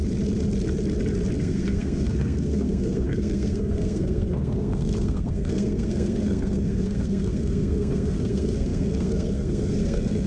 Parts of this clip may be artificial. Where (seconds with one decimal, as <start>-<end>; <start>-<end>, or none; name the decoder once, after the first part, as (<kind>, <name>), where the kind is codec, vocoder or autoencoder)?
1.4-10.3 (codec, SNAC)